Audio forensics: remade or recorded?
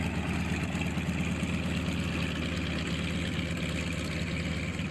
recorded